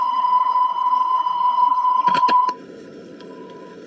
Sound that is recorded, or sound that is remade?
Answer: remade